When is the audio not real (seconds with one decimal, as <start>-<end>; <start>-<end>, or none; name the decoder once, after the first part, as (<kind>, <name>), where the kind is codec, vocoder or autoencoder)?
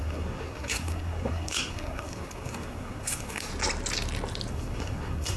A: 0.0-3.5 (codec, SNAC); 4.5-5.4